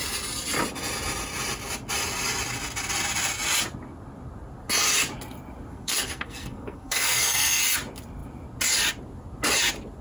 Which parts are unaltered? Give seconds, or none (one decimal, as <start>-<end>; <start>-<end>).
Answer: 0.0-5.7; 7.6-10.0